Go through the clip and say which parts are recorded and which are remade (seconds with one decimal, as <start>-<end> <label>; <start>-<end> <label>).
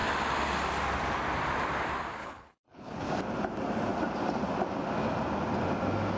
0.0-2.2 recorded; 2.2-3.0 remade; 3.0-6.2 recorded